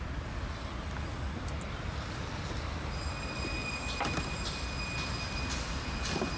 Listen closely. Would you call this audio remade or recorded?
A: recorded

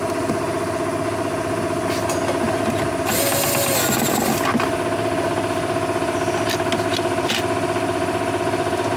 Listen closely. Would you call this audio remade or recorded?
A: recorded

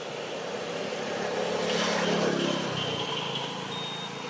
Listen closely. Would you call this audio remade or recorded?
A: recorded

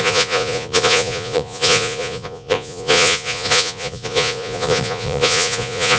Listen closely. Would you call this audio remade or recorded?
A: remade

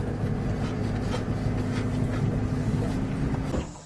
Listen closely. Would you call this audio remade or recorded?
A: recorded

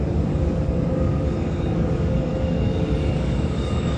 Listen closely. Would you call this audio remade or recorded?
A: remade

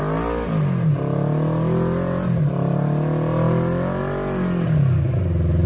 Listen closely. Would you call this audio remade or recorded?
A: recorded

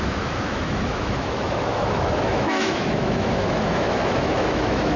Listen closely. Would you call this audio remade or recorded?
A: remade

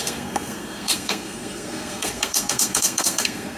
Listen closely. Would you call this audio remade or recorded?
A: remade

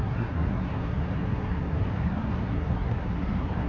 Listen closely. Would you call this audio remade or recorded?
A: remade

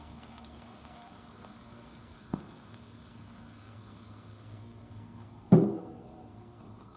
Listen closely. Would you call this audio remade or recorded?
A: remade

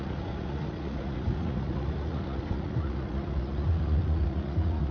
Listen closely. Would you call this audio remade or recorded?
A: remade